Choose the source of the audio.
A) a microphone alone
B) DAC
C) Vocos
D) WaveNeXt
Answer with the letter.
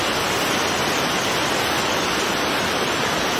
A